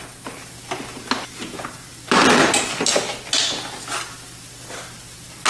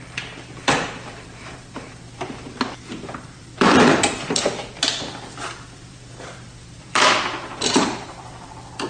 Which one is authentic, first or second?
first